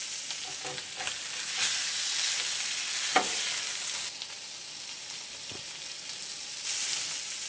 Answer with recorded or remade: recorded